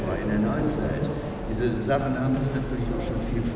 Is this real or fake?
real